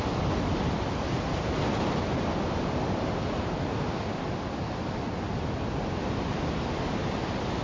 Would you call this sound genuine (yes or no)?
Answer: yes